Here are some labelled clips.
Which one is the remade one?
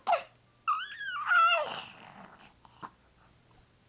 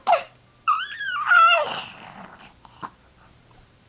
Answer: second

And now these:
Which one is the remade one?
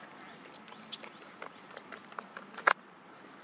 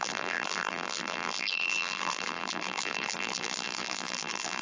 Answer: second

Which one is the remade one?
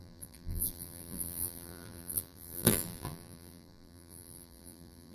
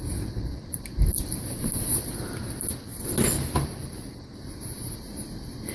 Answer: first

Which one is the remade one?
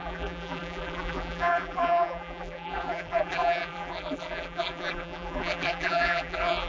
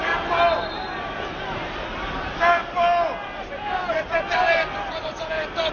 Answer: first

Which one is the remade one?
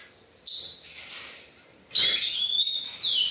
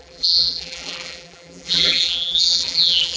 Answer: second